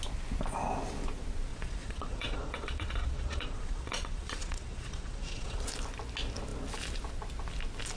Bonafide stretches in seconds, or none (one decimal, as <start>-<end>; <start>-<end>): 0.0-1.5; 5.6-8.0